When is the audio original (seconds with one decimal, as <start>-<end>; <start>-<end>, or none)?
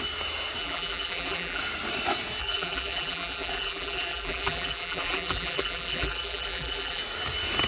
0.0-0.6; 1.6-2.4; 7.0-7.7